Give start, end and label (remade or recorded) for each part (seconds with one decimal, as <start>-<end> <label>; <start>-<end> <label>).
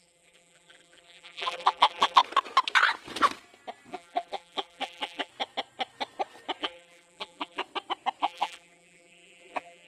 0.0-2.2 remade; 2.2-3.9 recorded; 3.9-5.3 remade; 5.3-6.6 recorded; 6.6-7.6 remade; 7.6-8.2 recorded; 8.2-9.9 remade